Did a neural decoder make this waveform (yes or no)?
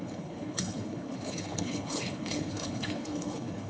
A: yes